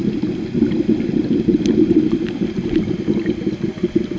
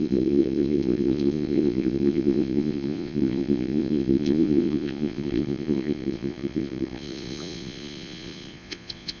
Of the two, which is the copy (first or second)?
second